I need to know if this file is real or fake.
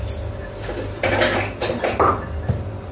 real